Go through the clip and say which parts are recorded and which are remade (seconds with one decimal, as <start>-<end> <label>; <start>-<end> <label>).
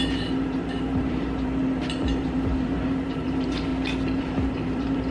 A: 0.0-3.7 remade; 3.7-4.2 recorded; 4.2-5.1 remade